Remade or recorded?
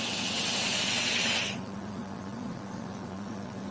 remade